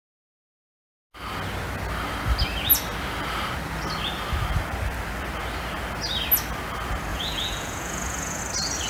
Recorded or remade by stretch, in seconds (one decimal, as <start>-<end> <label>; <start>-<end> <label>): 0.0-7.1 recorded; 7.1-8.4 remade; 8.4-8.9 recorded